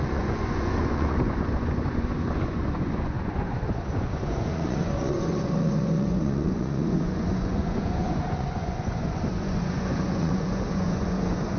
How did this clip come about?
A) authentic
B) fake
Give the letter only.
B